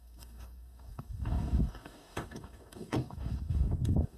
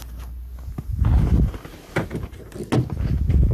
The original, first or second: second